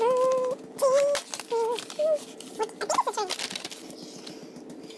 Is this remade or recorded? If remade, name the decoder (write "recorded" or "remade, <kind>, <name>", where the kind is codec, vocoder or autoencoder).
recorded